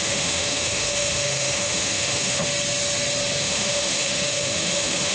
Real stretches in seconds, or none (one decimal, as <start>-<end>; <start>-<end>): 2.4-3.4